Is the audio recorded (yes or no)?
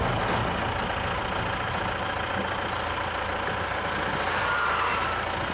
yes